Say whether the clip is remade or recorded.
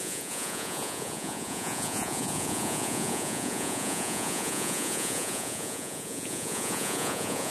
remade